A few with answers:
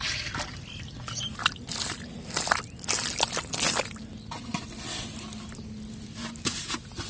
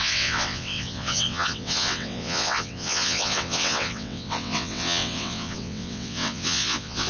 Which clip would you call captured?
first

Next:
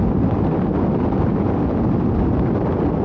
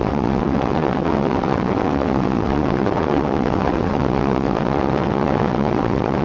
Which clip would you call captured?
first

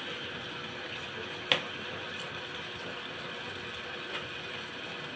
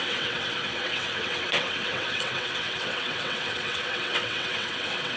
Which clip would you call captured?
first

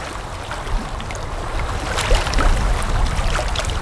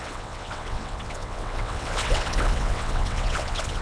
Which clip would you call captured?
first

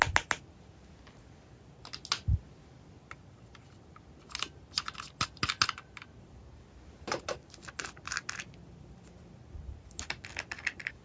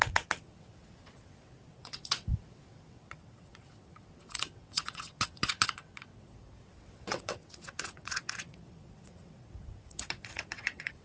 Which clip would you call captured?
first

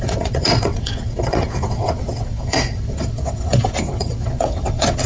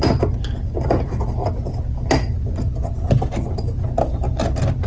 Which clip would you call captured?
second